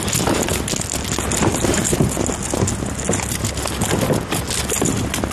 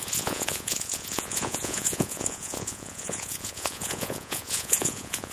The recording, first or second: first